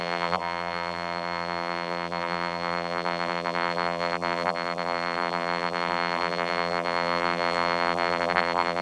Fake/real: fake